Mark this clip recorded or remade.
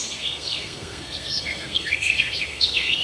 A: remade